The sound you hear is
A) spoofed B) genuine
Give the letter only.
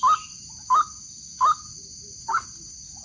B